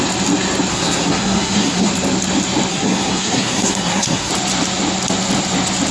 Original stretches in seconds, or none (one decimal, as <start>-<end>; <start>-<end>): 0.0-0.7; 1.9-2.7; 4.3-5.9